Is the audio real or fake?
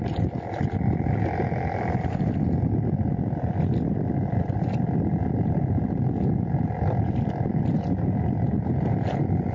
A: real